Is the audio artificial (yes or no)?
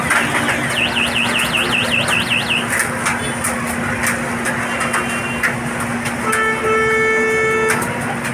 no